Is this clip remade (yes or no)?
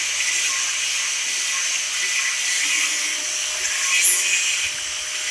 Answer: no